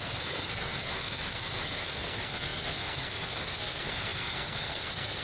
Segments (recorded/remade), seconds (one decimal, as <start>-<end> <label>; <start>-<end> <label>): 0.0-5.2 remade